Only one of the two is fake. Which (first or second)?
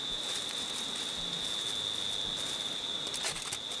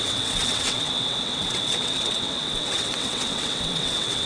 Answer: second